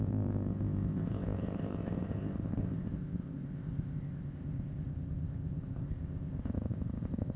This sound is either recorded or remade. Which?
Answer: remade